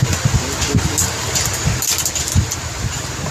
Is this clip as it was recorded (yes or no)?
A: yes